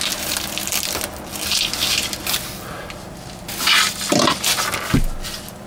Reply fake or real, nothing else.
real